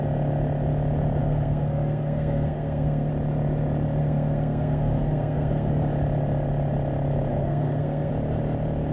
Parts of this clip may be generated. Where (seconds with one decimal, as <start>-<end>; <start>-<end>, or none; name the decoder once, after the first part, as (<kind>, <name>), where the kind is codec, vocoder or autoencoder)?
1.2-3.1 (codec, SNAC); 4.0-5.7; 7.3-8.1